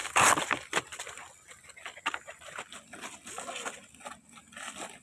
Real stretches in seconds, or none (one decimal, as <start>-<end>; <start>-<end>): 0.0-5.0